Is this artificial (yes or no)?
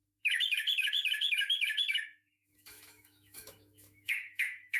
yes